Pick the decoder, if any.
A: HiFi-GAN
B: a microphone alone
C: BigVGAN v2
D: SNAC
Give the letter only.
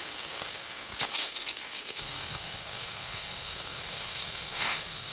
D